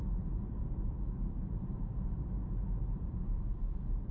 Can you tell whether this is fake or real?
fake